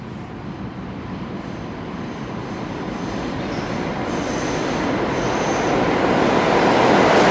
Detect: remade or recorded remade